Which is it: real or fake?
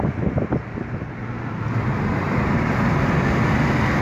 real